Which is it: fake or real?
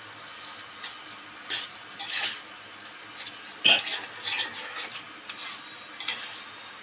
real